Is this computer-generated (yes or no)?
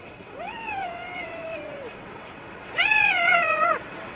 yes